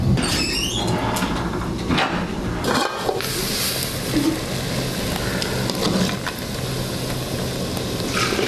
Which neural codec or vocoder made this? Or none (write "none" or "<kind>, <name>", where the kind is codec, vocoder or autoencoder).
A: none